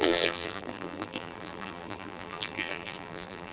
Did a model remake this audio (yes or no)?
yes